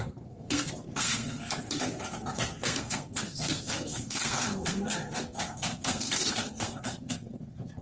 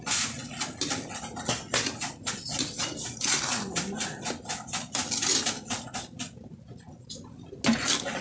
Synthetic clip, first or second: first